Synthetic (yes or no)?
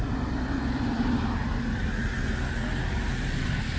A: no